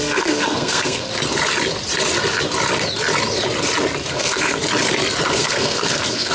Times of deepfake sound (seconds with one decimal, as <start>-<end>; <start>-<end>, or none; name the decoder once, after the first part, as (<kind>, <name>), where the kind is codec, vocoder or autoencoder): 0.0-1.1 (codec, SNAC); 4.1-4.6; 5.3-6.3